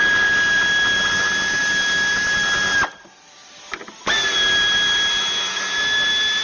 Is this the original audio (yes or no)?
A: yes